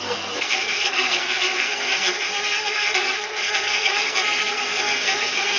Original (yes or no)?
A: no